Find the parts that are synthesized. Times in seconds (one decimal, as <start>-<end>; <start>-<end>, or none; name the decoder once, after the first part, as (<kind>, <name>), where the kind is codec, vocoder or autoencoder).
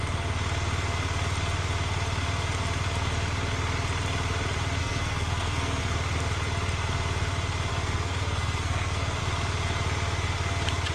4.8-5.8 (codec, SNAC); 7.7-9.2